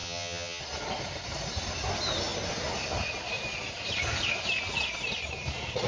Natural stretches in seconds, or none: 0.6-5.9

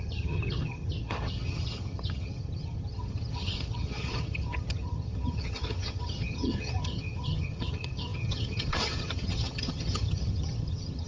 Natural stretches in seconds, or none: none

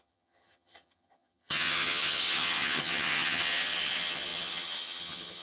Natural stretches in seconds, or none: none

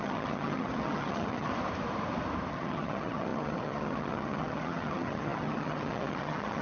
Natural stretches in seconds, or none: 1.5-2.5

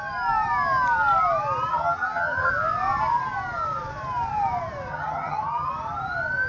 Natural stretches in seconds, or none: 0.0-1.7; 2.5-4.9; 5.7-6.5

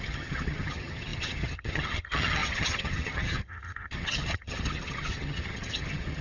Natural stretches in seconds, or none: none

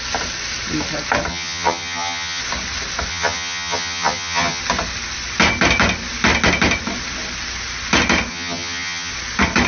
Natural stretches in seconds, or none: 0.0-1.3; 2.4-3.1; 4.6-8.3; 9.1-9.7

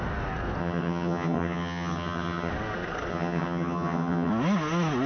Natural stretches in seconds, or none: 0.0-0.6; 2.5-3.1; 4.3-5.1